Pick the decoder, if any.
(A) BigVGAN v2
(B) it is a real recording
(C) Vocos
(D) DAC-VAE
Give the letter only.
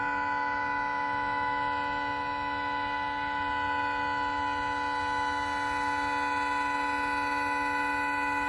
B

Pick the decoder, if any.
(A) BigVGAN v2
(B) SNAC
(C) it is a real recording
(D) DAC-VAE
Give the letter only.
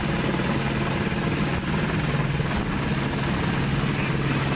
C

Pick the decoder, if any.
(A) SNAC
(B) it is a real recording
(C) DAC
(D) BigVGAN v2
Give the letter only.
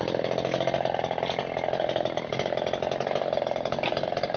B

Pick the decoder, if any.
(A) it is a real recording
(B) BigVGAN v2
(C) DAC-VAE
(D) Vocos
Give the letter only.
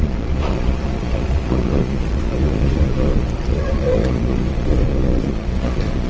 D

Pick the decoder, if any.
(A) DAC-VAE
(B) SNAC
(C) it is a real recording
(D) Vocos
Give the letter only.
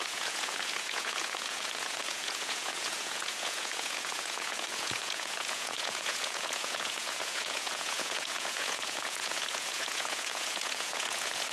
D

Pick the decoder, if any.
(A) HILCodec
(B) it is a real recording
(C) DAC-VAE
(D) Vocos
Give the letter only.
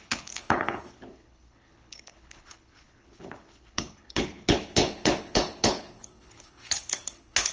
A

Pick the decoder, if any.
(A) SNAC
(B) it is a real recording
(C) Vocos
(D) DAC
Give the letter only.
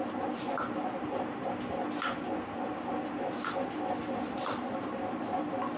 B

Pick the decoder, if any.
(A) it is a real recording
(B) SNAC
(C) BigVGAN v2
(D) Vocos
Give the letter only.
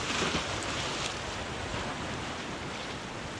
A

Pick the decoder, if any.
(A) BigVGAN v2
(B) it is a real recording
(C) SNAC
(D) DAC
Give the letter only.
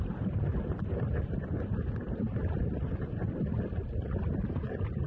A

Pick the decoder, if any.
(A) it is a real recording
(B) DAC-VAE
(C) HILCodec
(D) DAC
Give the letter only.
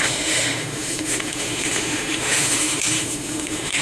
B